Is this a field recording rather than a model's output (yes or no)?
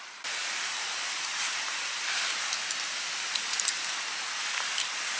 yes